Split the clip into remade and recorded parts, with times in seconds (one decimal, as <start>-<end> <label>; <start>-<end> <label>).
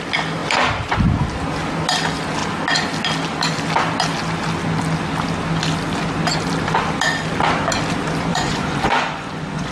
0.0-8.3 recorded; 8.3-9.7 remade